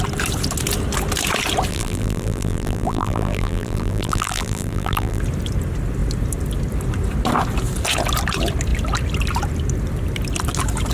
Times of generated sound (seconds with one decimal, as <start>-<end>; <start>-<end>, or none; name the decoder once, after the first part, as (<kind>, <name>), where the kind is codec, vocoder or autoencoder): 1.7-5.2 (vocoder, BigVGAN v2)